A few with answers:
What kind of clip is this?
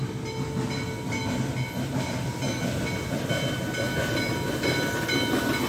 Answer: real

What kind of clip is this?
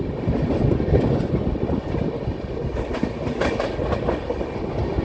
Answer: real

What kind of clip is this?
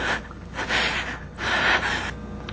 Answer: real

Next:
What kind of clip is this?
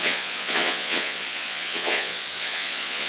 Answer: fake